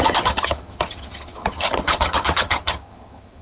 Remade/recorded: remade